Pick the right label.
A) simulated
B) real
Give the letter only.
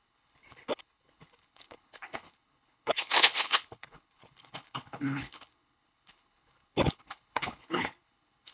A